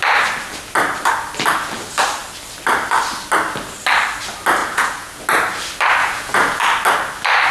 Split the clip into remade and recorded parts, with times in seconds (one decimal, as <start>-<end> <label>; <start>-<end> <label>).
0.0-4.6 recorded; 4.6-5.2 remade; 5.2-6.0 recorded; 6.0-6.6 remade; 6.6-7.5 recorded